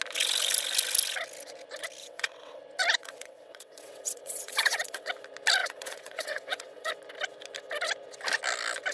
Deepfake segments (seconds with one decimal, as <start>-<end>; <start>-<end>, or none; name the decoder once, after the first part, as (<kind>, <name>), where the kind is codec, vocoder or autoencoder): 2.0-2.6 (vocoder, WaveNeXt); 3.0-5.1; 5.6-6.9